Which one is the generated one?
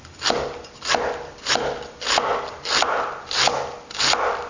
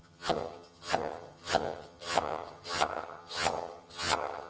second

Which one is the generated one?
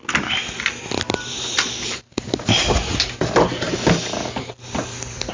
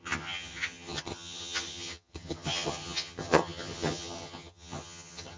second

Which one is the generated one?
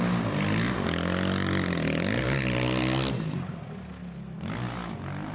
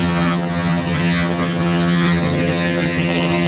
second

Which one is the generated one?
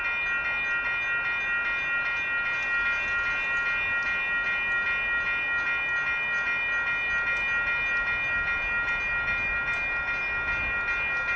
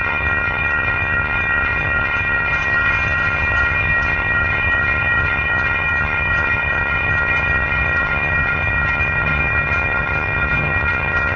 second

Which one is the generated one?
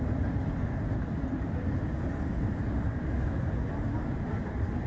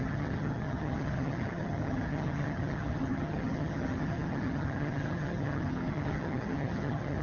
second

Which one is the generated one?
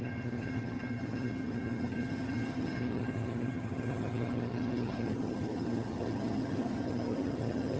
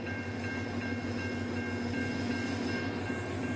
first